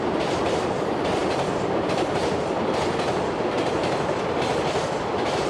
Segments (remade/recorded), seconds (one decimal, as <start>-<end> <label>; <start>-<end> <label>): 0.0-5.5 recorded